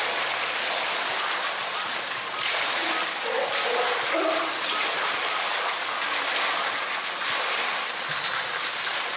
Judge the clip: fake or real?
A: real